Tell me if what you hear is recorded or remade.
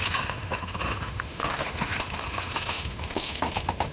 remade